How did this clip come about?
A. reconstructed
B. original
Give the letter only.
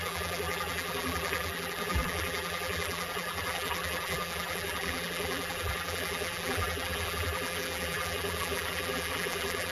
A